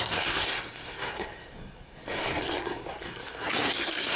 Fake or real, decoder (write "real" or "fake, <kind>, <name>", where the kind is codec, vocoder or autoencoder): fake, codec, SNAC